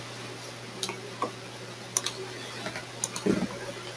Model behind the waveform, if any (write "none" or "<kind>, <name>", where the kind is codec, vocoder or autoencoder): none